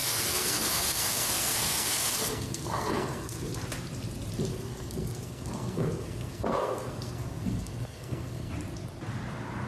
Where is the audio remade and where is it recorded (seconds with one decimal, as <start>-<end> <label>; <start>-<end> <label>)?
0.0-3.5 remade; 3.5-4.5 recorded; 4.5-8.5 remade; 8.5-9.7 recorded